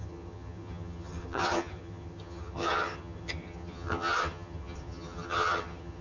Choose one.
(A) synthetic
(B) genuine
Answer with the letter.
A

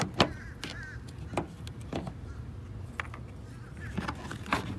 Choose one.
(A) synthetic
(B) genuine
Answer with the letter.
B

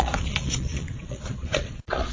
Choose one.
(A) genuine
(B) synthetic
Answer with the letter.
B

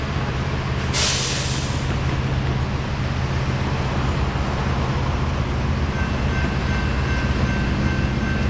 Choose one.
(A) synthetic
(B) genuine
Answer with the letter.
B